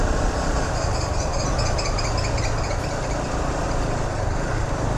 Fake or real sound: real